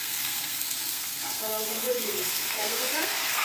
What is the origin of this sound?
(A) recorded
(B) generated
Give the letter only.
B